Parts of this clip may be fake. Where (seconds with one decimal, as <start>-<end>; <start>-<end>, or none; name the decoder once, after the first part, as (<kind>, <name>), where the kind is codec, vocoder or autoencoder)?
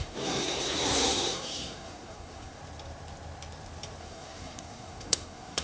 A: 0.0-2.6 (codec, SNAC); 4.0-5.6